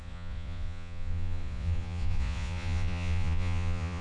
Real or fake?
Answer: fake